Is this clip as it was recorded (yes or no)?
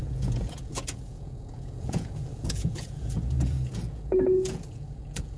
no